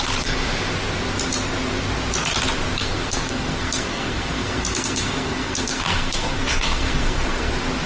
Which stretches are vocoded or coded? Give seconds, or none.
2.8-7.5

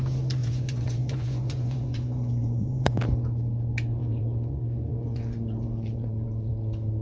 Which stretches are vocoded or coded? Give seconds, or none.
0.4-3.0; 4.0-6.5